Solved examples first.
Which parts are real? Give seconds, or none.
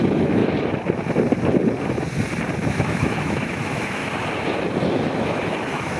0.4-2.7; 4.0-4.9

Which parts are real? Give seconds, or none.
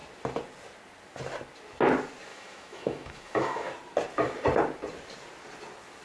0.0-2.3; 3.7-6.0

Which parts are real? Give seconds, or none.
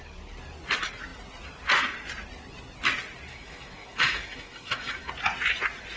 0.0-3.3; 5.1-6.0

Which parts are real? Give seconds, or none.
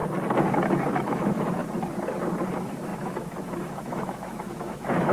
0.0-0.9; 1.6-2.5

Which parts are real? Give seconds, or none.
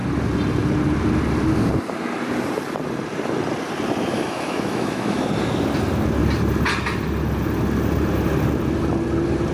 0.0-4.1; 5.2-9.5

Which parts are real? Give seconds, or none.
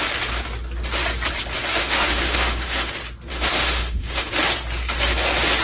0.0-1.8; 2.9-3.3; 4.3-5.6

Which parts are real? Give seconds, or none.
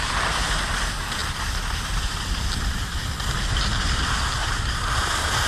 0.0-5.5